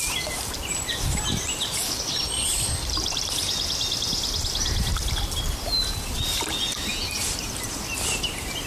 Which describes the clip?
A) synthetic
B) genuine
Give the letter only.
B